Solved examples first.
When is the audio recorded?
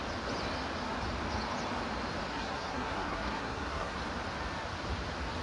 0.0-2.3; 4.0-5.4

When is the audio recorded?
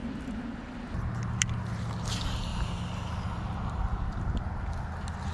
0.0-5.3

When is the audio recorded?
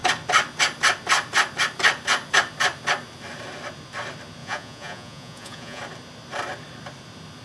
0.0-4.4; 5.8-7.4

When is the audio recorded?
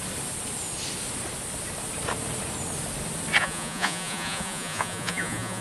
0.0-3.4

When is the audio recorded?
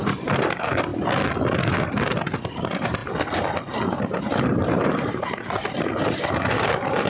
0.9-1.7; 3.0-3.8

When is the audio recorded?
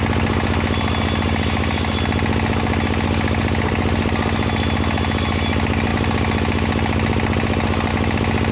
0.0-8.5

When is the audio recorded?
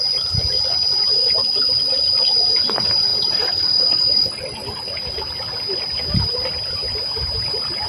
0.0-7.9